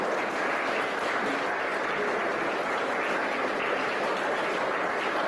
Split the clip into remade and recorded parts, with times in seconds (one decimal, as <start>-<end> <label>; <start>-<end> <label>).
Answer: 0.0-5.3 recorded